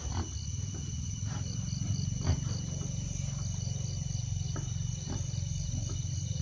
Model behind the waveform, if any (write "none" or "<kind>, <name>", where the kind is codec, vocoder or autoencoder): none